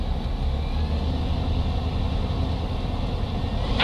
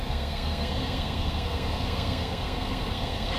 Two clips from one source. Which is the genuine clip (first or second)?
first